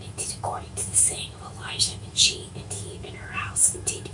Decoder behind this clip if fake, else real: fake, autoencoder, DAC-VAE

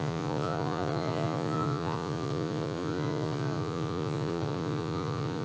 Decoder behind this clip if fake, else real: fake, vocoder, Vocos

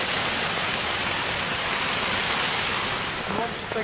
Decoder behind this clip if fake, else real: real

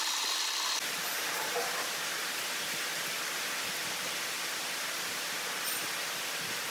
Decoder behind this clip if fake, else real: real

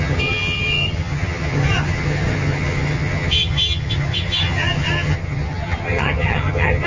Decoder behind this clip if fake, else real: fake, vocoder, HiFi-GAN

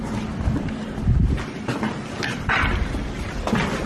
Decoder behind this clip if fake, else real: real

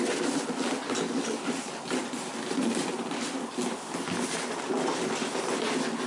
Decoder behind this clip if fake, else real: real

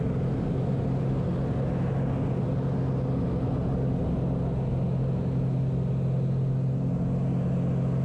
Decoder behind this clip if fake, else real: real